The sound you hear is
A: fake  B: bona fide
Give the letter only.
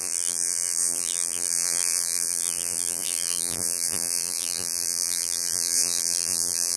A